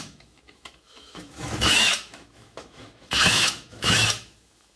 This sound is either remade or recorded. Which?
remade